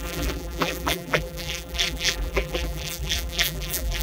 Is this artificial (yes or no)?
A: yes